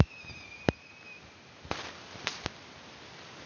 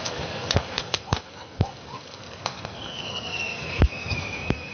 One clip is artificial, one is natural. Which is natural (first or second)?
first